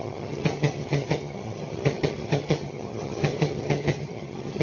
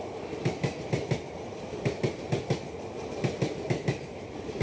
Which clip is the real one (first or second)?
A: second